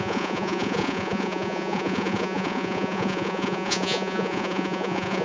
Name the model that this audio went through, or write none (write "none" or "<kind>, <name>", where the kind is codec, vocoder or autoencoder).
vocoder, Vocos